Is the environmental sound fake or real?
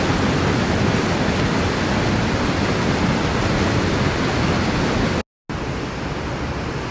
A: real